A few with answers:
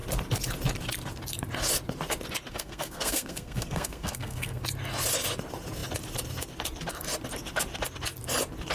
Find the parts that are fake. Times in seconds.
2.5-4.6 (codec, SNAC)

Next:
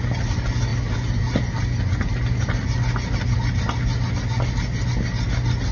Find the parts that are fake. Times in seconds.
none